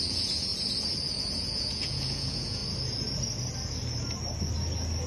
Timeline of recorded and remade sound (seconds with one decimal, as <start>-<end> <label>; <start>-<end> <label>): 0.0-0.5 remade; 0.5-1.3 recorded; 1.3-2.6 remade; 2.6-5.1 recorded